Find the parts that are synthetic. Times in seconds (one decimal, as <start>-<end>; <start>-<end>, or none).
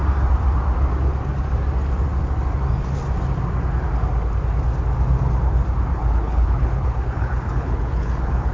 5.9-8.5